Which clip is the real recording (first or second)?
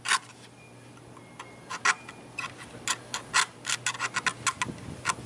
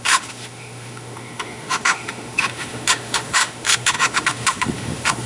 first